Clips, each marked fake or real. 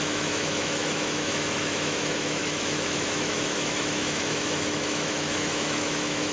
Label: fake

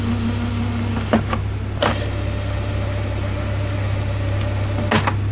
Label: real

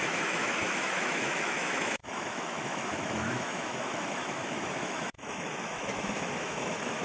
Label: fake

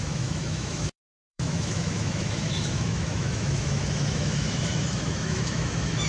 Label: fake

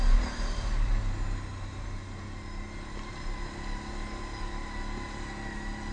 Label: real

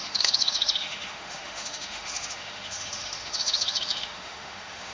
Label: fake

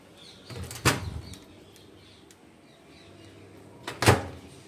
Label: real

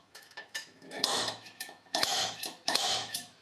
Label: fake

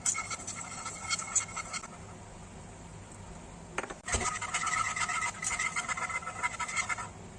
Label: real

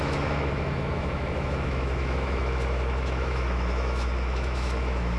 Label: fake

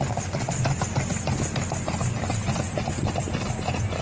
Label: real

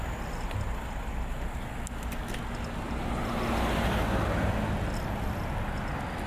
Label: real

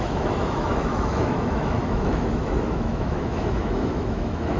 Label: fake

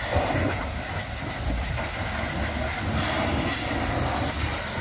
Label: real